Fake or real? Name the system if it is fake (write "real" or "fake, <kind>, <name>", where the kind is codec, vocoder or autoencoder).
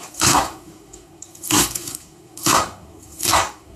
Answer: fake, codec, SNAC